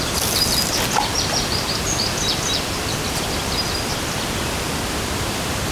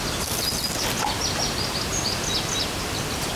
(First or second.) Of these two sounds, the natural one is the second